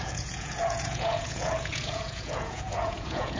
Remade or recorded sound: remade